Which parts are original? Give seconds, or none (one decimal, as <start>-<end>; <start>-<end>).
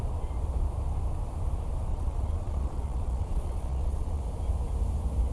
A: 0.0-1.9; 4.2-5.3